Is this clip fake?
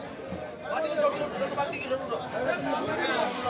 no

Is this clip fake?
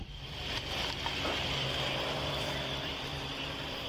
yes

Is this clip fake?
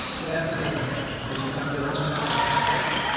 no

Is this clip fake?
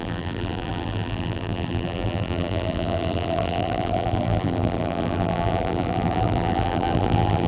yes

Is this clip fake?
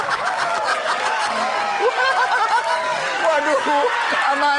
yes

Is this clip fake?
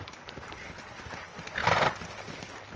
no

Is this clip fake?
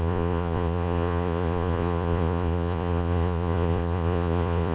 yes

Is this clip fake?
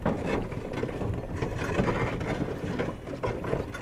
no